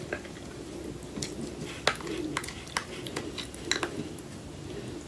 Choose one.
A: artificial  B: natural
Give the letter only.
B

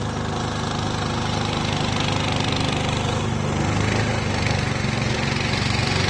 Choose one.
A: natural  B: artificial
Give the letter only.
A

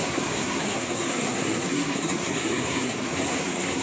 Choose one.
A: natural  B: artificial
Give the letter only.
B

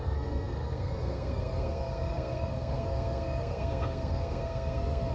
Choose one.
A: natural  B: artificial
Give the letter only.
B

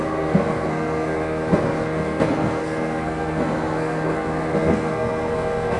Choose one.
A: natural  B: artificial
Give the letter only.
B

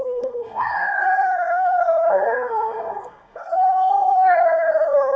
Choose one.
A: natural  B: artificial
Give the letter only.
B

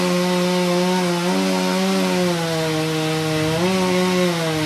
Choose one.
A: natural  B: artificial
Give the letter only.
A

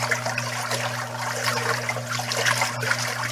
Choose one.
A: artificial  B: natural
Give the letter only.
B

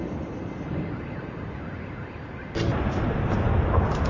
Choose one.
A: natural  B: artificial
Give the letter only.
A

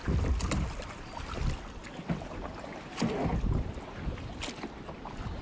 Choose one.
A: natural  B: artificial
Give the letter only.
A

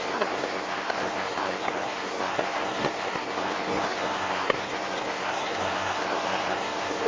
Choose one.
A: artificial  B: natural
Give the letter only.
A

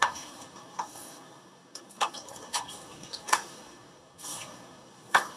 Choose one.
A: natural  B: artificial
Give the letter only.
B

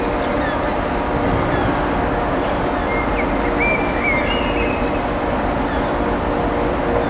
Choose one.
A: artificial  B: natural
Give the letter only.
B